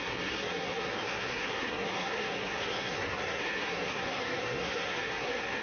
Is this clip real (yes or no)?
no